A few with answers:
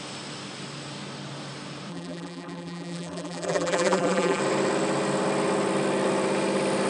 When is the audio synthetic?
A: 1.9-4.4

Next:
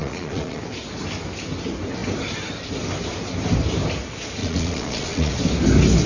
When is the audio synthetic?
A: 0.0-0.6; 4.4-5.3

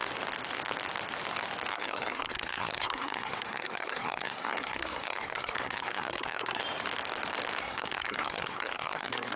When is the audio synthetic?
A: 1.7-6.6; 7.6-9.4

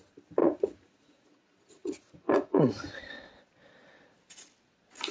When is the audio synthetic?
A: 0.4-2.7

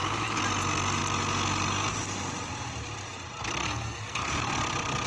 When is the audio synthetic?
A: 3.6-4.3